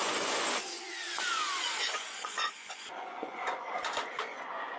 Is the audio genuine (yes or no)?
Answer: no